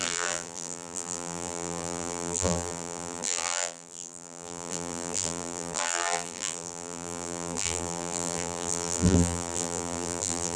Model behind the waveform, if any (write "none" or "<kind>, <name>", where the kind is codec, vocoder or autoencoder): vocoder, BigVGAN v2